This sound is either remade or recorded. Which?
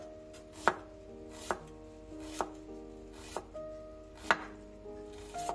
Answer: recorded